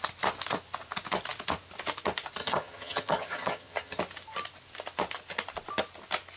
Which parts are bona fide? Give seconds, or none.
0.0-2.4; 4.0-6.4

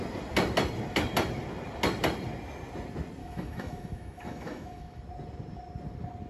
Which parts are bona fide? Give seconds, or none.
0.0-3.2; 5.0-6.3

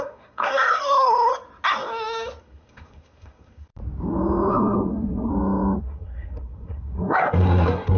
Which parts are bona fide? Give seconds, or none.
1.3-2.4; 3.7-4.5; 5.3-5.8

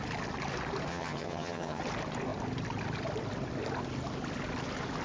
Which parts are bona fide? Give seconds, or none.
0.0-0.9; 1.8-5.0

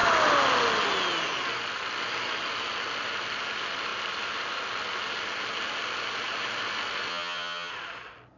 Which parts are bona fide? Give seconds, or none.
0.0-7.1; 7.7-8.4

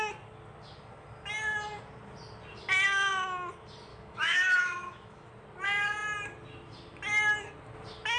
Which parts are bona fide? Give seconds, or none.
0.0-3.9; 5.3-8.2